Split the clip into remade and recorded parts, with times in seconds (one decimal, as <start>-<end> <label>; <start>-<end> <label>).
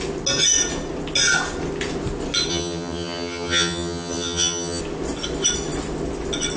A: 0.0-2.5 recorded; 2.5-4.8 remade; 4.8-6.6 recorded